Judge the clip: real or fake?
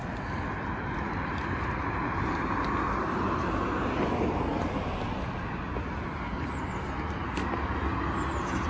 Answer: real